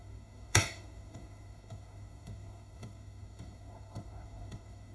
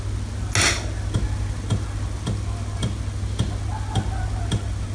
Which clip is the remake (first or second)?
first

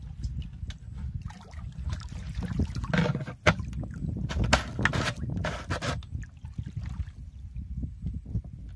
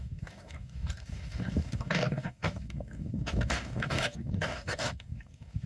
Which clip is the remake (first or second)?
second